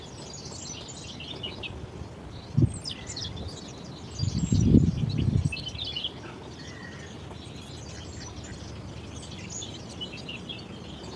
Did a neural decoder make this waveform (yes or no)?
no